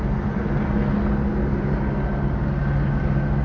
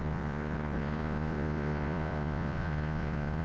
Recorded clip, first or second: first